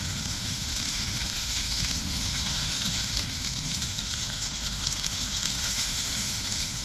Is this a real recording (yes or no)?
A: no